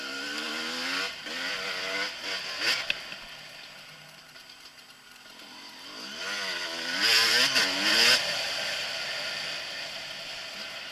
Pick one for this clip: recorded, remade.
recorded